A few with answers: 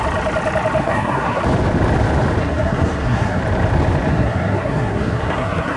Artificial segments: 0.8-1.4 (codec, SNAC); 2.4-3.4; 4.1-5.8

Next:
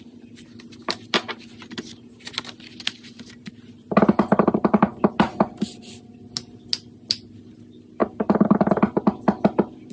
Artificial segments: none

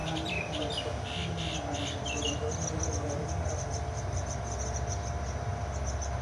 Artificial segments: none

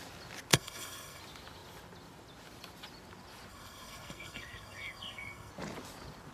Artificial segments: 0.5-1.2 (codec, SNAC); 3.5-5.5

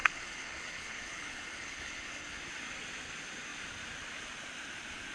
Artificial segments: 0.0-2.4 (codec, HILCodec)

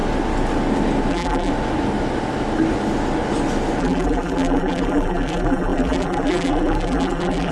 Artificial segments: 1.1-1.5 (vocoder, BigVGAN v2); 3.8-7.5

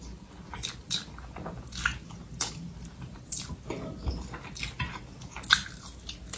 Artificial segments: none